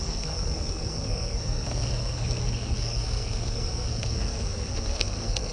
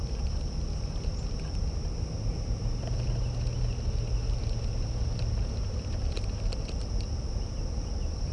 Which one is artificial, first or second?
first